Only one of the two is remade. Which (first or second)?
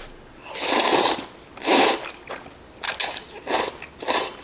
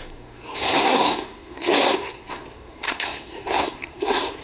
second